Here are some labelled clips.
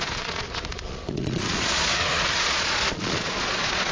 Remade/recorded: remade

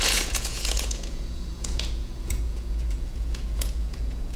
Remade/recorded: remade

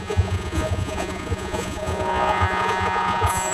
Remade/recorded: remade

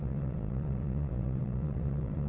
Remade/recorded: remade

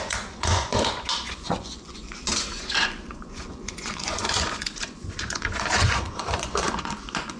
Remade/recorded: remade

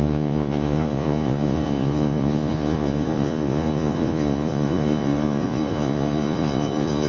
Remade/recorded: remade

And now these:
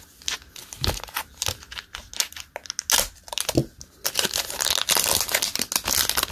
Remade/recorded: recorded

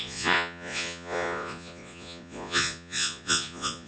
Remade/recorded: remade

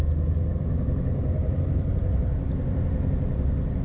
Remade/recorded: recorded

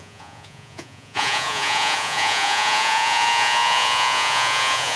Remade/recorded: remade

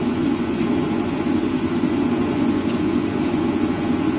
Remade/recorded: remade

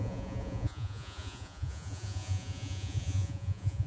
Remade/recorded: remade